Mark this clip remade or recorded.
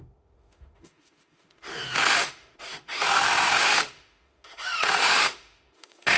remade